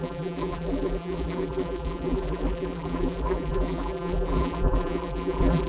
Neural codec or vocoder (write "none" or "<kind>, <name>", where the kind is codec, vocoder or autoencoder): vocoder, BigVGAN v2